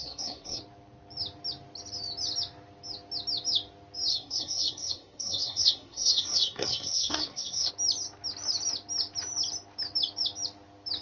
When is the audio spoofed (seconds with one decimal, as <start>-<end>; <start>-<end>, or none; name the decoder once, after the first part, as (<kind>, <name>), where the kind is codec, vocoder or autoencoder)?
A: 0.0-0.6 (codec, SNAC); 4.1-7.7